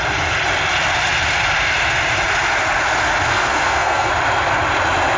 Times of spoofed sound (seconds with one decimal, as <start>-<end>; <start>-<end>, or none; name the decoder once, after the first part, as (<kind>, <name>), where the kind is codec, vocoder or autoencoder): 3.3-4.1 (codec, SNAC)